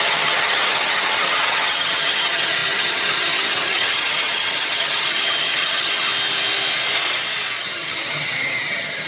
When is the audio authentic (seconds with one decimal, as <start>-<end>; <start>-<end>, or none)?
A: 6.1-7.6